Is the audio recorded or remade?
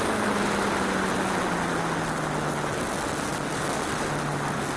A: recorded